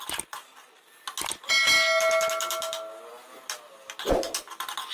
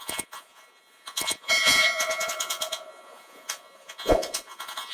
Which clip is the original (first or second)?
first